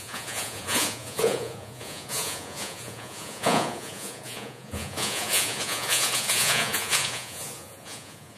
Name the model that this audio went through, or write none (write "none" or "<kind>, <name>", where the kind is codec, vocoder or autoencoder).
vocoder, Vocos